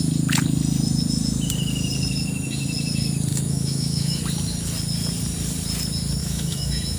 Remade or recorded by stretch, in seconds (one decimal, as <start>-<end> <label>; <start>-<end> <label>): 0.0-3.3 recorded; 3.3-4.2 remade; 4.2-6.2 recorded; 6.2-7.0 remade

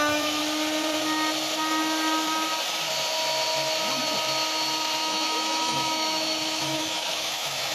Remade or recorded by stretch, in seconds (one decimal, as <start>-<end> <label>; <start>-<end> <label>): 0.0-0.4 remade; 0.4-5.0 recorded; 5.0-7.7 remade

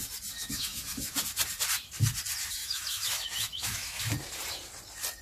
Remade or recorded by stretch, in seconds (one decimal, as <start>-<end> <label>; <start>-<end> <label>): 0.0-0.4 recorded; 0.4-1.1 remade; 1.1-2.6 recorded; 2.6-4.0 remade; 4.0-5.2 recorded

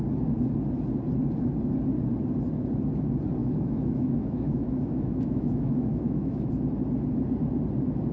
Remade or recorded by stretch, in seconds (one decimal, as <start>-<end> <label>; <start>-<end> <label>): 0.0-3.4 recorded; 3.4-6.5 remade; 6.5-8.1 recorded